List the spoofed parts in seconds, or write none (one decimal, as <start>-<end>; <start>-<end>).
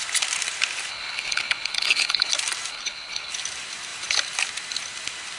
0.9-2.3; 2.7-3.3